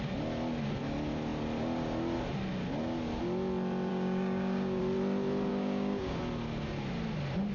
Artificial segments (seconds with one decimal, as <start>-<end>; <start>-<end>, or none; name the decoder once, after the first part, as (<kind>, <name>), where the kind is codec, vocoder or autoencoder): 3.9-4.8 (codec, DAC); 5.5-6.2